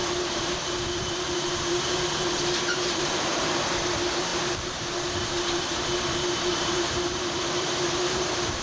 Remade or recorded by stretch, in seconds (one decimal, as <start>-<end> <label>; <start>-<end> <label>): 0.0-8.6 remade